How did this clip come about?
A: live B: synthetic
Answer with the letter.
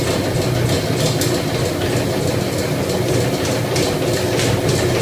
A